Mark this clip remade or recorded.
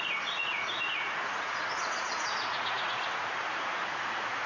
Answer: remade